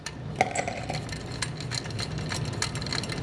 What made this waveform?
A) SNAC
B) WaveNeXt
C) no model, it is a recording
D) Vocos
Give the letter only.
C